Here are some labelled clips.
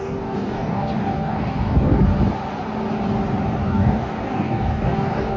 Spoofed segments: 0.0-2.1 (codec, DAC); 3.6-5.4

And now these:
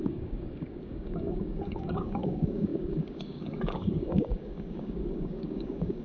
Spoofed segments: 0.0-6.0 (codec, DAC)

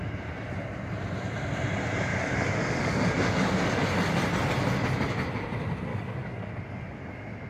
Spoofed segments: 2.1-3.7 (codec, DAC); 5.9-6.5

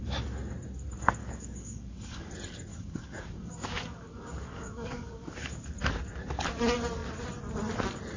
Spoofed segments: 1.2-2.3 (codec, DAC); 2.7-5.6

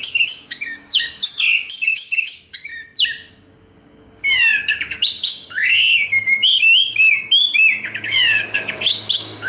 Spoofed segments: 0.0-2.7 (codec, DAC); 3.3-9.5

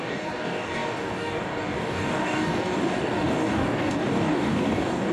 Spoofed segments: 0.0-5.1 (codec, DAC)